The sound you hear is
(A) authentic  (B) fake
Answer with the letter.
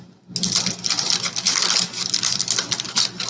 A